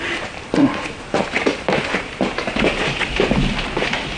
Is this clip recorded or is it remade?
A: recorded